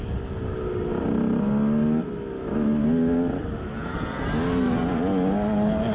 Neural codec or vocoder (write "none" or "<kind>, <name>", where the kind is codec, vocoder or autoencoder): none